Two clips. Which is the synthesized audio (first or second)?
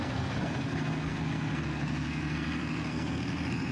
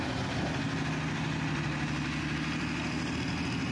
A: first